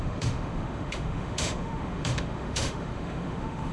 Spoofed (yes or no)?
yes